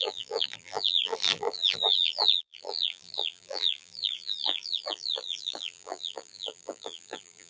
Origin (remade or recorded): remade